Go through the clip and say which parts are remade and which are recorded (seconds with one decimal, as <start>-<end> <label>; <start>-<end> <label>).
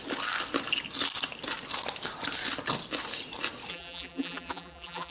0.0-3.7 recorded; 3.7-5.1 remade